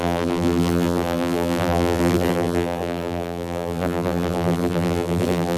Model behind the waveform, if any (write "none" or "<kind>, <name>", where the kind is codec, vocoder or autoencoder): vocoder, BigVGAN v2